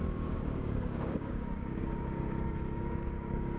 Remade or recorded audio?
remade